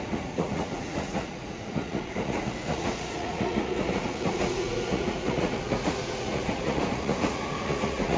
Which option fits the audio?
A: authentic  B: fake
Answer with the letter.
B